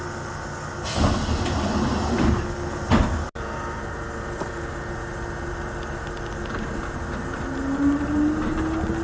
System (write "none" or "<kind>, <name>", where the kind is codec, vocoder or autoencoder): none